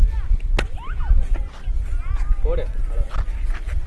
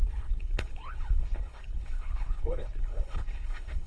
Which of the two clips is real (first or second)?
first